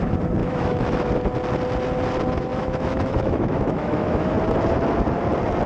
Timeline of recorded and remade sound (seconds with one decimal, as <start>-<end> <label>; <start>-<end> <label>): 0.0-0.4 recorded; 0.4-1.1 remade; 1.1-2.5 recorded; 2.5-4.3 remade; 4.3-5.7 recorded